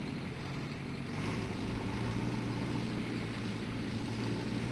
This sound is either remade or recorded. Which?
remade